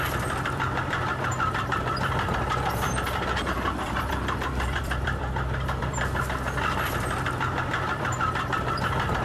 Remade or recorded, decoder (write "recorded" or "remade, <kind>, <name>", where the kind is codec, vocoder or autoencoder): remade, vocoder, BigVGAN v2